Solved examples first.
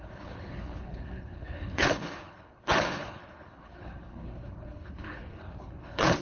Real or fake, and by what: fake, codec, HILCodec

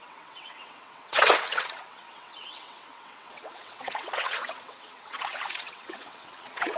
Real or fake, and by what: fake, vocoder, WaveNeXt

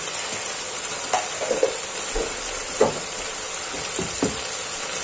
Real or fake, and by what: real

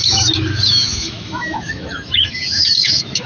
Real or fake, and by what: fake, autoencoder, DAC-VAE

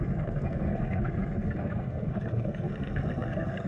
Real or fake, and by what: fake, codec, SNAC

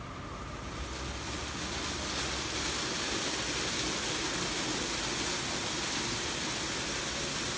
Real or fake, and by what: real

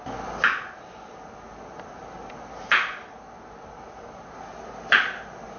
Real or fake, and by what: real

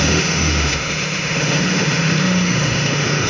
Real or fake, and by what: fake, autoencoder, DAC-VAE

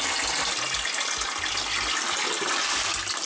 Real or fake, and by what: real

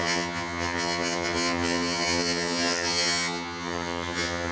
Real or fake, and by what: fake, vocoder, HiFi-GAN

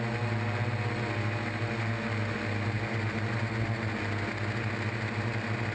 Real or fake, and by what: real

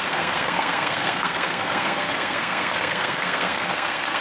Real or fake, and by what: fake, codec, SNAC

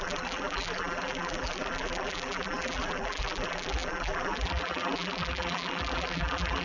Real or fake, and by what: fake, vocoder, BigVGAN v2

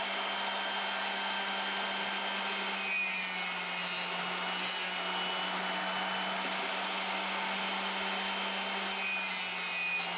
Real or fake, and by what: real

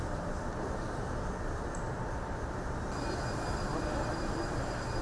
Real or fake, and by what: fake, vocoder, BigVGAN v2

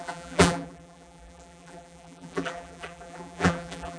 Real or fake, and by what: fake, vocoder, BigVGAN v2